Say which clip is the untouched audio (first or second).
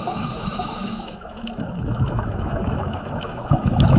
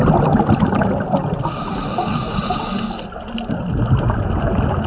second